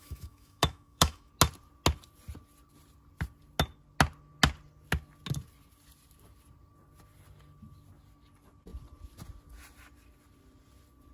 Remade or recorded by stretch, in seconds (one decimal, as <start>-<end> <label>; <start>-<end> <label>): 0.0-1.3 remade; 1.3-11.1 recorded